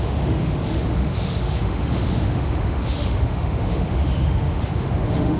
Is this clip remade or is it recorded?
remade